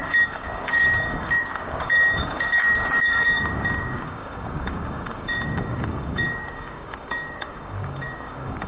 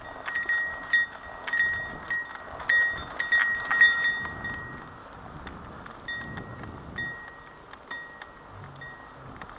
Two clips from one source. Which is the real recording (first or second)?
second